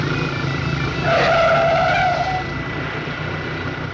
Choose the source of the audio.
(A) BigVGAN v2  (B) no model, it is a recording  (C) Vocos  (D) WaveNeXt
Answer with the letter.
B